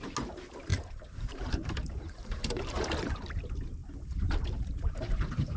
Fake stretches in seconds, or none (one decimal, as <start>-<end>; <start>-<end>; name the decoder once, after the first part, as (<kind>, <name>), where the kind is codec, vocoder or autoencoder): 0.7-2.9 (vocoder, BigVGAN v2); 3.8-5.6